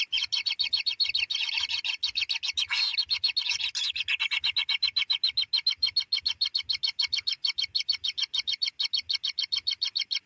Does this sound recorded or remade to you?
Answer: recorded